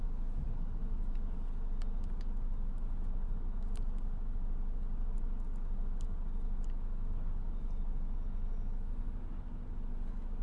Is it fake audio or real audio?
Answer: real